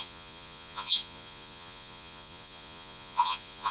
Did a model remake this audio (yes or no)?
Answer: yes